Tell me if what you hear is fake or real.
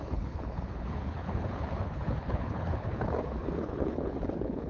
fake